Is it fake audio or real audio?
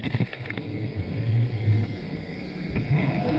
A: fake